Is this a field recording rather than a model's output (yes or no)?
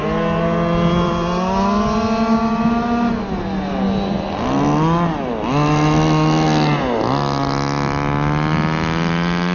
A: yes